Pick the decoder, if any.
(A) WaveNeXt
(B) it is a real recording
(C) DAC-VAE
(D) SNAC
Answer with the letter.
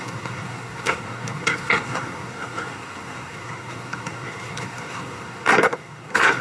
D